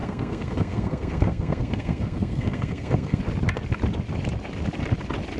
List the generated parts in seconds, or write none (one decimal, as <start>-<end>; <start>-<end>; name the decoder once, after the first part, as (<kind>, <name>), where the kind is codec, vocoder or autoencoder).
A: 0.0-3.2 (codec, SNAC)